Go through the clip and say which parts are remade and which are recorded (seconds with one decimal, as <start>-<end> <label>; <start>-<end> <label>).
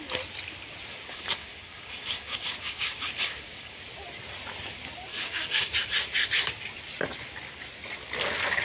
0.0-0.9 recorded; 0.9-3.8 remade; 3.8-5.1 recorded; 5.1-5.7 remade; 5.7-8.6 recorded